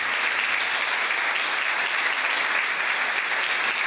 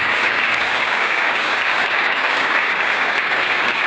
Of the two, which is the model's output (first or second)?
second